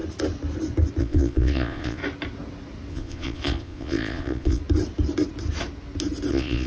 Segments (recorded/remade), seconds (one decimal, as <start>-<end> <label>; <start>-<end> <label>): 0.0-1.0 recorded; 1.0-2.0 remade; 2.0-2.9 recorded; 2.9-4.6 remade; 4.6-6.3 recorded; 6.3-6.7 remade